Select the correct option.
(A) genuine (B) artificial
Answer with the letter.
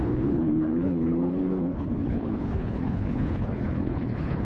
B